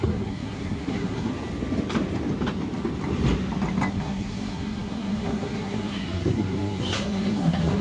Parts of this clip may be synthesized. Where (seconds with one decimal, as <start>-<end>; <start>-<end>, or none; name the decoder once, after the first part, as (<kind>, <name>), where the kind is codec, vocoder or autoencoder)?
0.0-1.3 (codec, SNAC); 3.9-7.8